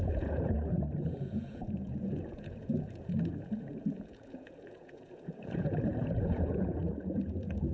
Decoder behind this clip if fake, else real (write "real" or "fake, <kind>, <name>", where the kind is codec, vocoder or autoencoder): fake, vocoder, Vocos